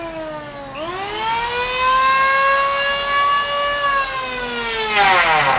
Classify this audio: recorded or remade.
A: recorded